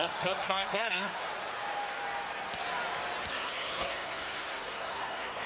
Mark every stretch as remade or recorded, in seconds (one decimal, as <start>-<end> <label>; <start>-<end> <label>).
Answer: 0.0-1.3 remade; 1.3-3.3 recorded; 3.3-5.5 remade